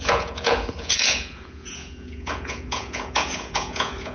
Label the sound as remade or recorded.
remade